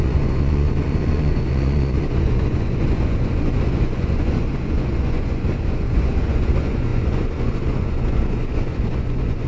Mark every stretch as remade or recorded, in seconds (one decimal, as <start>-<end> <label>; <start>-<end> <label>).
0.0-9.5 remade